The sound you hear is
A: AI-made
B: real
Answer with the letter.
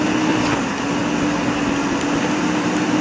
B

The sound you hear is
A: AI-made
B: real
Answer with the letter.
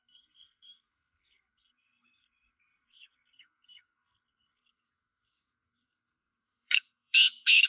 A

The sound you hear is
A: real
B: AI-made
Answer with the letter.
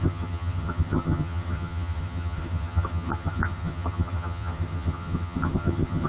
B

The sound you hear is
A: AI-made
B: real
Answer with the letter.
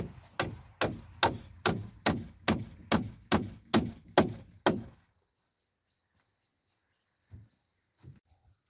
B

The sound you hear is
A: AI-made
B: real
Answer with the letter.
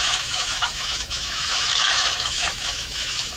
A